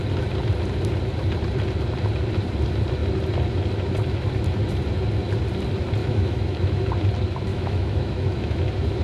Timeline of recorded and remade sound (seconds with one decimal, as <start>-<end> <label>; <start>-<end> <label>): 0.0-6.0 recorded; 6.0-6.9 remade; 6.9-7.5 recorded; 7.5-8.6 remade; 8.6-9.0 recorded